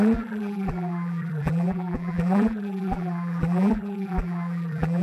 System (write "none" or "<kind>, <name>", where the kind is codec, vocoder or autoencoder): vocoder, BigVGAN v2